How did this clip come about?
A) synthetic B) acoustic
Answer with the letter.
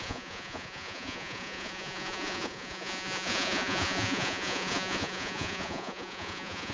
A